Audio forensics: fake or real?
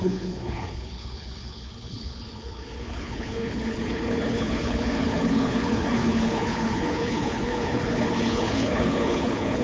fake